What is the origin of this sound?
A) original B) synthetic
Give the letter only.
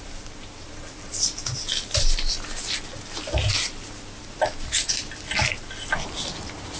A